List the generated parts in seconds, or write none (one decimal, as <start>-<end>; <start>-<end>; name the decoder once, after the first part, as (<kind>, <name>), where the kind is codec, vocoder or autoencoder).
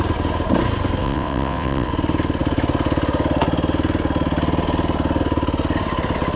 1.0-1.9 (vocoder, WaveNeXt)